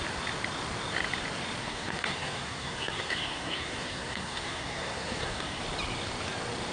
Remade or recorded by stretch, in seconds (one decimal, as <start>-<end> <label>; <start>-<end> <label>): 0.0-1.6 recorded; 1.6-5.6 remade; 5.6-6.7 recorded